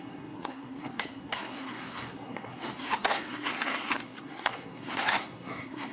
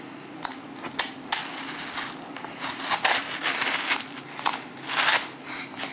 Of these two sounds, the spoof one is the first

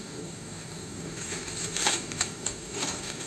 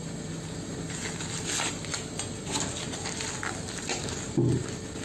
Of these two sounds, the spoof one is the first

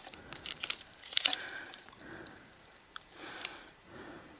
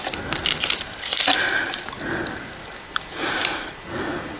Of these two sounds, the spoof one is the first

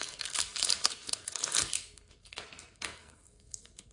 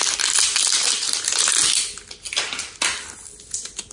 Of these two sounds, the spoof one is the first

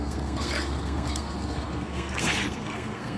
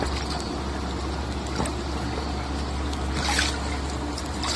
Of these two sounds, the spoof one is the first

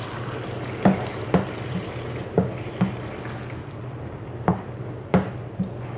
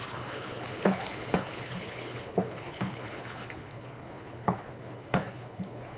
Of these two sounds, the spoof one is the second